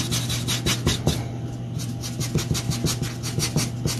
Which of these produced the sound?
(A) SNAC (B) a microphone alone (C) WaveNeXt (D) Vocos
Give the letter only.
B